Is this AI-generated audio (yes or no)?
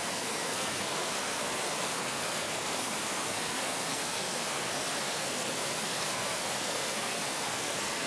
yes